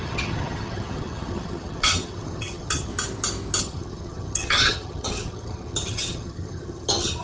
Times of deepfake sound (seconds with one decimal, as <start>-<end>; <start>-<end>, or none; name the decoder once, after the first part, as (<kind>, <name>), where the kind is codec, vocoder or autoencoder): 0.0-2.9 (vocoder, HiFi-GAN); 3.6-7.2